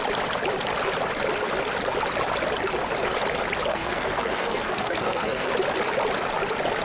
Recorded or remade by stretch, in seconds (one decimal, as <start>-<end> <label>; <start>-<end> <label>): 0.0-3.7 recorded; 3.7-5.5 remade; 5.5-6.8 recorded